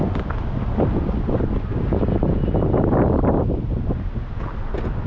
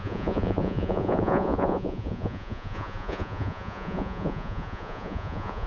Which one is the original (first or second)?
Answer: first